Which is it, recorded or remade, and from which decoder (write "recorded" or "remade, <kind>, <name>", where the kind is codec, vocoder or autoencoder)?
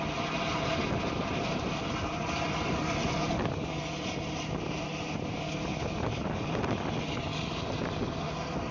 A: recorded